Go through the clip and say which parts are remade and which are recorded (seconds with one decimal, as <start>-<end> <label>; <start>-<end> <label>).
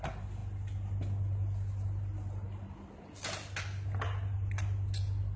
0.0-5.4 recorded